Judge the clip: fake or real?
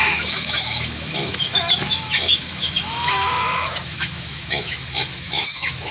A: fake